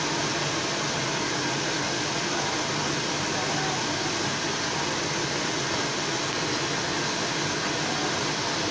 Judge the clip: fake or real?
real